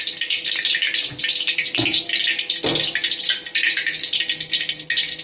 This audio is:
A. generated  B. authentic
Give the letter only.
B